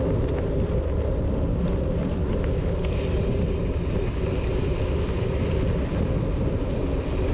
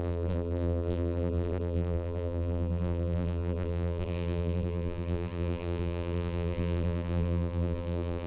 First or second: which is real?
first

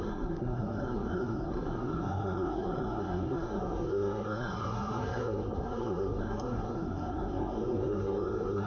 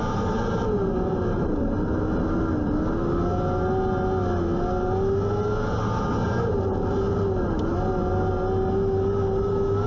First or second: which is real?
second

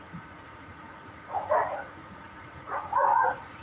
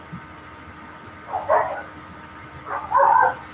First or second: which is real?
second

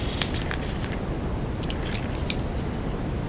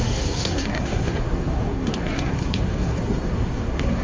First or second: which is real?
first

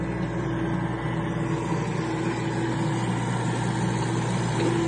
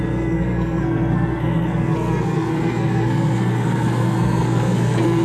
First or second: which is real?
first